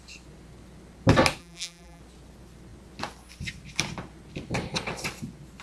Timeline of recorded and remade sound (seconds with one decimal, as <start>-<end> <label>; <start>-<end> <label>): 0.0-1.4 recorded; 1.4-2.0 remade; 2.0-5.6 recorded